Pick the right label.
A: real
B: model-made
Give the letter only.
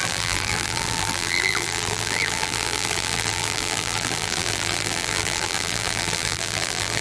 B